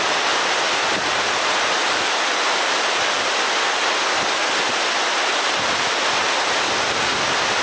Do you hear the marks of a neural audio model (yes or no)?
no